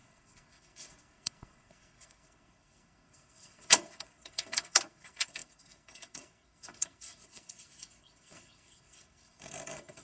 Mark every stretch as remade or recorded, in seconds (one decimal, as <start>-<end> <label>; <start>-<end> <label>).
0.0-10.0 remade